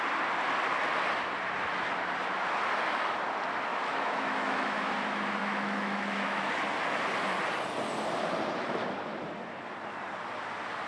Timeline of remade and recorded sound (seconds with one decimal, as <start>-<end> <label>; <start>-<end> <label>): 0.0-3.7 recorded; 3.7-4.9 remade; 4.9-5.4 recorded; 5.4-6.5 remade; 6.5-10.9 recorded